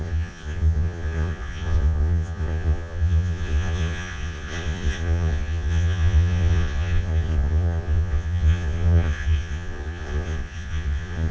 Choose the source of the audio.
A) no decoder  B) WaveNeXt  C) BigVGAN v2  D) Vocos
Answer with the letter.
D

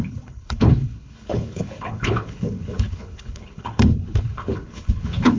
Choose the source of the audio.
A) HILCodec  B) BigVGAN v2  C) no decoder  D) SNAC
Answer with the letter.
A